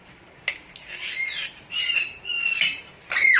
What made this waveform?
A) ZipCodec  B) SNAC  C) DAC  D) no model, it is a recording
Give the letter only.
D